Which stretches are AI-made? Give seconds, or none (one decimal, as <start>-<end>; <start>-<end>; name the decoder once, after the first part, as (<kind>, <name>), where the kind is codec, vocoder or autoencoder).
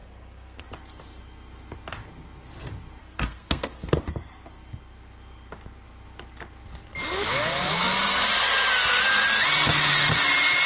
0.0-0.7 (codec, SNAC); 3.0-4.0